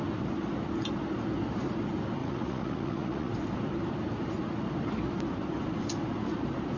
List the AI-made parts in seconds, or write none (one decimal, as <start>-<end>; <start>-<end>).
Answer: 2.2-3.3